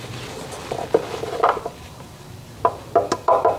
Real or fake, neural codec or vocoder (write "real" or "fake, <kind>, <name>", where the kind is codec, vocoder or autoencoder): fake, vocoder, BigVGAN v2